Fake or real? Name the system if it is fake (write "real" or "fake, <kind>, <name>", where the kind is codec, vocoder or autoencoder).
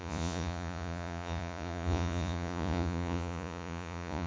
fake, vocoder, Vocos